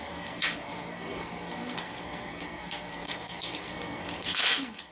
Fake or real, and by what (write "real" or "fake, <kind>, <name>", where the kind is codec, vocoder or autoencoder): fake, codec, SNAC